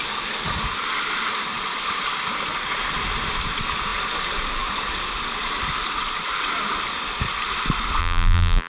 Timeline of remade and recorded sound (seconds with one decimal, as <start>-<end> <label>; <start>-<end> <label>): 0.0-8.0 recorded; 8.0-8.7 remade